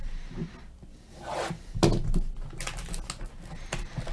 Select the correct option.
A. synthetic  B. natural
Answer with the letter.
B